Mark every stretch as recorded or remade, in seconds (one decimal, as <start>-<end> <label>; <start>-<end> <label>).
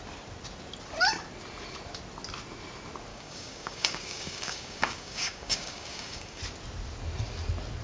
0.0-3.1 recorded; 3.1-6.4 remade; 6.4-7.8 recorded